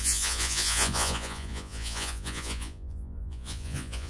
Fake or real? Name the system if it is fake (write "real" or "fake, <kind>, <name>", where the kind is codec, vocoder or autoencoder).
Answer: fake, vocoder, Vocos